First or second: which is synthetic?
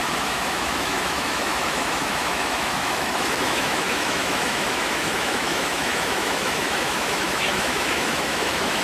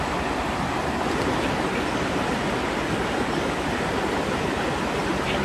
first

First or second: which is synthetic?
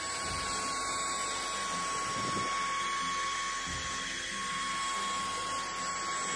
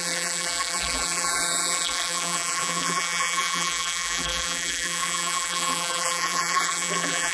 second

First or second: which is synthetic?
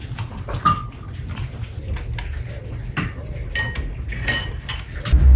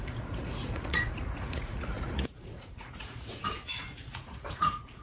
second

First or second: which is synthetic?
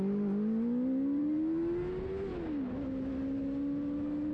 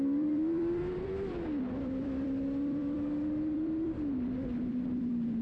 second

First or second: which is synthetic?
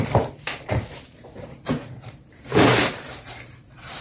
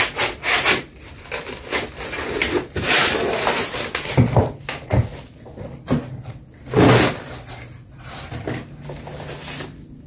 first